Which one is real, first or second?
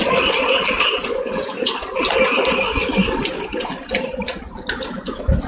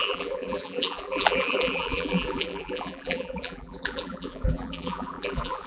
first